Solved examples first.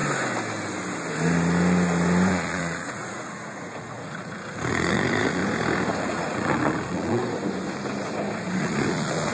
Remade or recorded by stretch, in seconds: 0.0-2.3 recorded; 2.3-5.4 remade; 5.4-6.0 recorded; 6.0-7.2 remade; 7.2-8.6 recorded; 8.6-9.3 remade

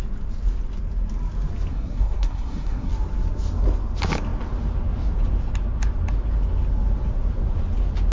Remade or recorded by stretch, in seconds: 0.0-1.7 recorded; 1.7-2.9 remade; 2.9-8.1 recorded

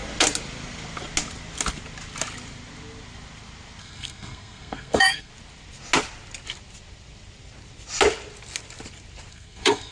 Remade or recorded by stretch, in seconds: 0.0-3.8 recorded; 3.8-5.3 remade; 5.3-9.3 recorded; 9.3-9.9 remade

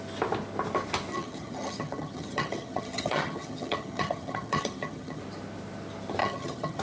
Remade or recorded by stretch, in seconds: 0.0-1.1 recorded; 1.1-5.2 remade; 5.2-6.2 recorded; 6.2-6.8 remade

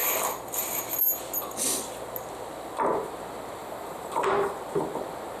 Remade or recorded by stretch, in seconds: 0.0-3.6 recorded; 3.6-4.3 remade; 4.3-5.4 recorded